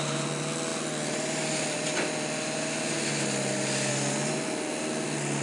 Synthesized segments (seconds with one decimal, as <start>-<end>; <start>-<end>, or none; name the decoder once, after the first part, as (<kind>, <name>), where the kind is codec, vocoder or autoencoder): none